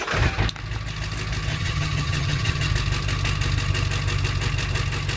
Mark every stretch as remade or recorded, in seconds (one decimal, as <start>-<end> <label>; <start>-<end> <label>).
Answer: 0.0-1.5 recorded; 1.5-2.7 remade; 2.7-5.2 recorded